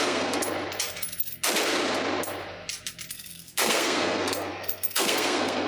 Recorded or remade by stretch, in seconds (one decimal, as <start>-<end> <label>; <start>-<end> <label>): 0.0-0.4 remade; 0.4-3.1 recorded; 3.1-5.7 remade